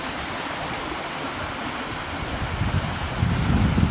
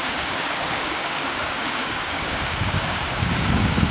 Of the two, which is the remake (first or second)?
second